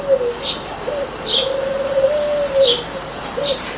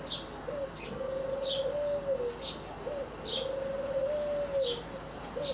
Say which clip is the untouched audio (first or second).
second